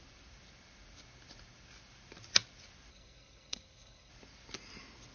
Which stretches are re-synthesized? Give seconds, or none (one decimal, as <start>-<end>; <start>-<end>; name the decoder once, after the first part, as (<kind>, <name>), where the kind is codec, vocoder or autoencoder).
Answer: 2.9-4.1 (codec, SNAC)